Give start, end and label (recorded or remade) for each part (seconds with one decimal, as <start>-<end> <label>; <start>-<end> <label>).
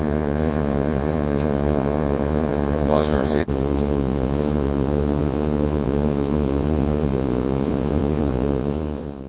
0.0-9.3 remade